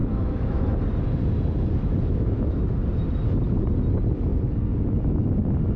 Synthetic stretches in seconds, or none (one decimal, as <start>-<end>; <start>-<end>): 0.0-0.7; 1.8-2.6